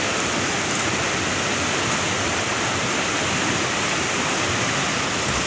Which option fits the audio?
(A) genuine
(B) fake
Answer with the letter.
A